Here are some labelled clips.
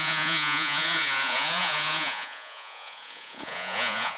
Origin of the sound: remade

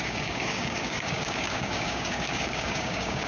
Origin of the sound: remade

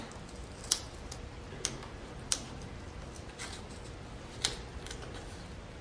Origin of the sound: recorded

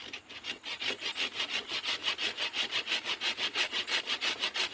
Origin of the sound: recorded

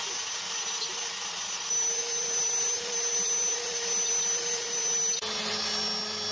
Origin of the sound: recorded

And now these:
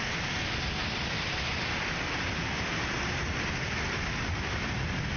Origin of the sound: recorded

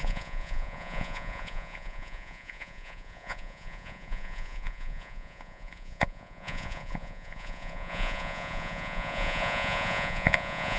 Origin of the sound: remade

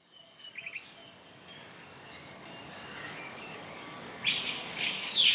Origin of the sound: remade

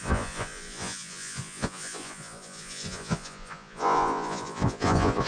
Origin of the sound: remade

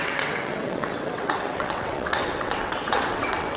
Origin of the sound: remade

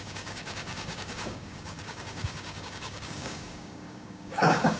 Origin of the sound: remade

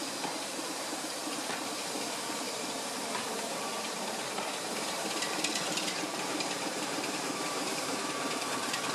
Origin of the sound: remade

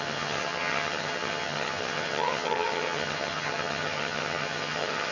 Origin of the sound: remade